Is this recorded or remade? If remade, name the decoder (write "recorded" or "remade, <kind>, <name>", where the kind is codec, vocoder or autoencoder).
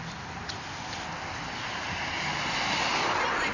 recorded